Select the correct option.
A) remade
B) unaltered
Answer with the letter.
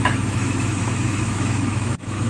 A